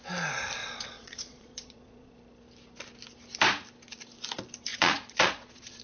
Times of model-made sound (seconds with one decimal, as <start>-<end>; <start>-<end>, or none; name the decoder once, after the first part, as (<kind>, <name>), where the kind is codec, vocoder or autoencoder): 0.6-2.1 (vocoder, Vocos); 4.7-5.8